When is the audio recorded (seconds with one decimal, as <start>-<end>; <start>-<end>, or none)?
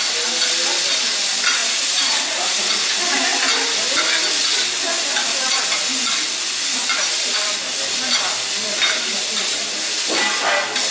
0.0-1.6; 2.7-10.9